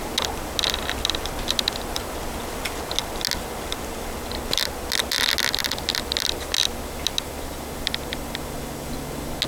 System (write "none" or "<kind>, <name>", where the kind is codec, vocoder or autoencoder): none